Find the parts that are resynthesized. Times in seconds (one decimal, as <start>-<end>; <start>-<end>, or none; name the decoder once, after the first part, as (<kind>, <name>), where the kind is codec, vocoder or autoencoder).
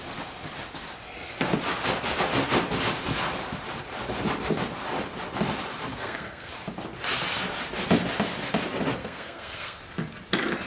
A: 5.9-6.5 (codec, SNAC); 9.0-9.8